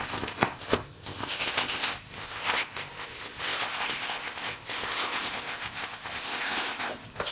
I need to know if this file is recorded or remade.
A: remade